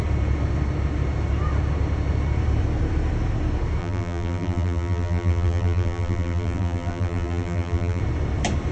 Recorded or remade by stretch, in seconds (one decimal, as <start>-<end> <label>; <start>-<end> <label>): 0.0-3.8 recorded; 3.8-8.0 remade; 8.0-8.7 recorded